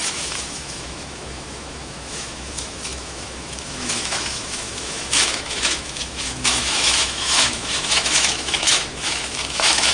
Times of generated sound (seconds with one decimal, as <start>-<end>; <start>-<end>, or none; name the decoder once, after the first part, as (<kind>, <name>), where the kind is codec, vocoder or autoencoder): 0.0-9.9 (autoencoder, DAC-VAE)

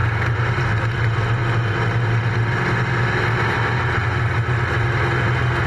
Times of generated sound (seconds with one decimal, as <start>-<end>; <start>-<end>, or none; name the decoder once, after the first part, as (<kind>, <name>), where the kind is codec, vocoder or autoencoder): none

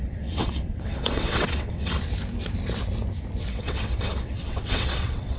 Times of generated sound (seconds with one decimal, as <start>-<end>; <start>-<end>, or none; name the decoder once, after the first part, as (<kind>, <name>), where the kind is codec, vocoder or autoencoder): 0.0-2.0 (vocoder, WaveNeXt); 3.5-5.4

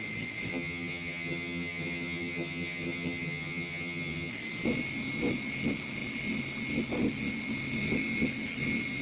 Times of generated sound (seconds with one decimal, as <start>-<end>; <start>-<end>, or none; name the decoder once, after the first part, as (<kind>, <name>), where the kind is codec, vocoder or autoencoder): 0.5-4.3 (vocoder, HiFi-GAN)

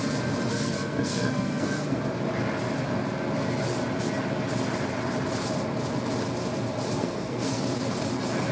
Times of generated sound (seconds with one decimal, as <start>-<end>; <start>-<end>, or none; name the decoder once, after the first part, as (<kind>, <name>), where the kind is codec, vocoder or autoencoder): 0.5-2.0 (codec, SNAC); 7.0-7.6